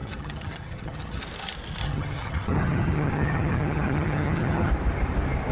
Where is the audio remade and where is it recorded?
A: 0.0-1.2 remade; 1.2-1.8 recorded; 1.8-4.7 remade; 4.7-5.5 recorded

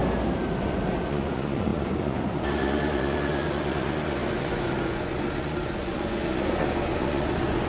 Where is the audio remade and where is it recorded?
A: 0.0-0.6 recorded; 0.6-7.7 remade

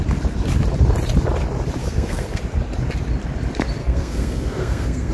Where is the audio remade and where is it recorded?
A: 0.0-1.8 recorded; 1.8-2.4 remade; 2.4-3.8 recorded; 3.8-5.1 remade

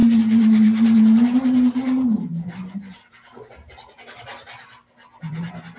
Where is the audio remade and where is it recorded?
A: 0.0-3.5 remade; 3.5-5.8 recorded